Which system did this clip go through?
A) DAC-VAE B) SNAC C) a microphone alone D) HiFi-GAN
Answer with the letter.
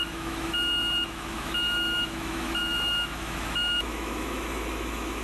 A